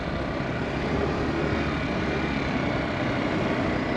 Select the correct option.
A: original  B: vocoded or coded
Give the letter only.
A